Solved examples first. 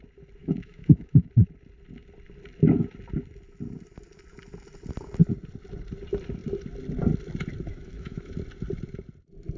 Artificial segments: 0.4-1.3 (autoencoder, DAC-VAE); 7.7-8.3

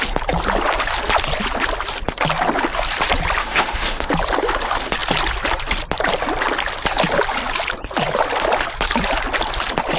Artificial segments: 3.4-4.1 (autoencoder, DAC-VAE)

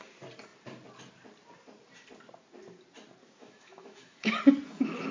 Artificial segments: 3.4-4.4 (autoencoder, DAC-VAE)

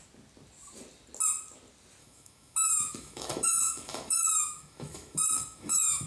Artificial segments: 2.0-6.1 (autoencoder, DAC-VAE)

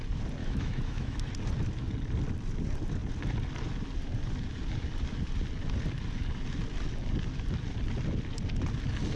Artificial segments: 0.4-1.3 (autoencoder, DAC-VAE)

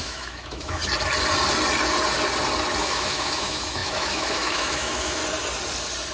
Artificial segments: 0.0-0.8 (autoencoder, DAC-VAE); 2.8-5.2

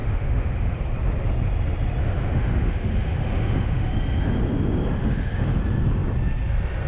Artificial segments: 0.0-0.7 (autoencoder, DAC-VAE); 2.0-3.9; 5.0-5.6

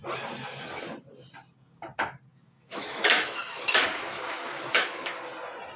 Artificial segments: 2.3-5.1 (autoencoder, DAC-VAE)